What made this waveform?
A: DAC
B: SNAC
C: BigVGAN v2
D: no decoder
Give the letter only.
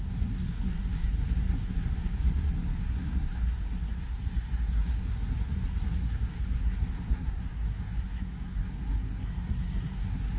B